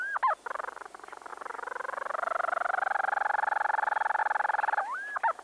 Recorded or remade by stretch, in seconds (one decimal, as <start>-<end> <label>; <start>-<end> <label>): 0.0-5.4 recorded